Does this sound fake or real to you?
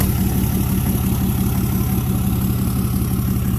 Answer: real